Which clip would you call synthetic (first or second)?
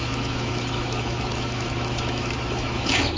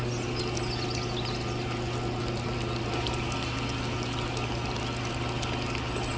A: first